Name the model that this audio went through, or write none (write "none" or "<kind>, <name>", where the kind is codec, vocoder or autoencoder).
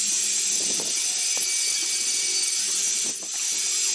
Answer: none